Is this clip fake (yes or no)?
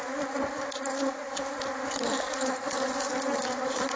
no